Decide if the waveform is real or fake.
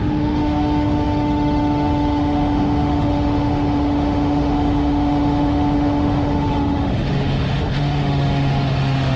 fake